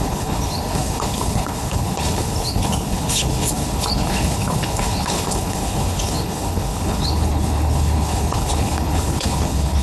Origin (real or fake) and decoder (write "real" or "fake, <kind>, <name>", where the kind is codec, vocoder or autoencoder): fake, codec, HILCodec